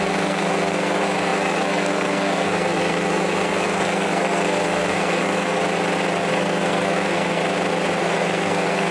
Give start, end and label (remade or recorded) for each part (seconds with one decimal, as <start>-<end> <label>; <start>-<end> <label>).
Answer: 0.0-5.6 remade; 5.6-6.3 recorded; 6.3-7.4 remade; 7.4-8.0 recorded; 8.0-8.9 remade